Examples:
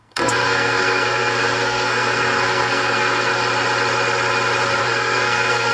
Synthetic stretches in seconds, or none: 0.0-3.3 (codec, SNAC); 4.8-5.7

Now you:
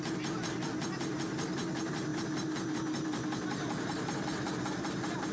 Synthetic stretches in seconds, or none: none

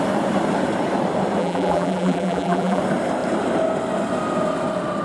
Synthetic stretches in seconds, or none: 1.4-2.8 (vocoder, BigVGAN v2)

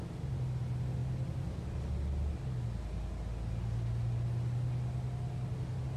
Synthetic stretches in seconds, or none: none